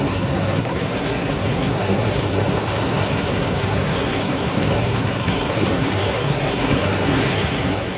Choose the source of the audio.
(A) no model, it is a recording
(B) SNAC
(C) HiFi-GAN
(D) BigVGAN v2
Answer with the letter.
B